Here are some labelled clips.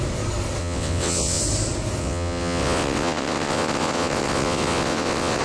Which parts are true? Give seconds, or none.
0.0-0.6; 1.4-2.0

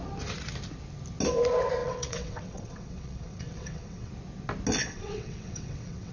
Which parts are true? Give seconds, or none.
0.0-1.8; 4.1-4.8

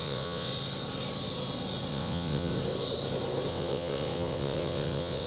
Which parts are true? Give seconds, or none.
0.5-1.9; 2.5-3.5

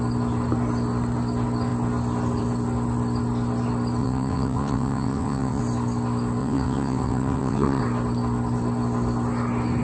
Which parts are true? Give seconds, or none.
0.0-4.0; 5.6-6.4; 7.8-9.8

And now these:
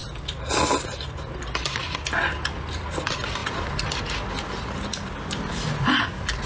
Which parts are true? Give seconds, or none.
0.0-6.5